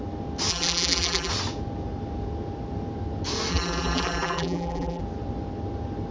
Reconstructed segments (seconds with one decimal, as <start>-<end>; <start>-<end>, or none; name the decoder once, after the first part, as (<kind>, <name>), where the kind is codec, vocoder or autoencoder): 0.5-1.3 (vocoder, BigVGAN v2); 3.5-5.0